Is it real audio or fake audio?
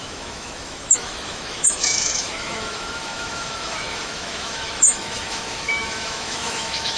fake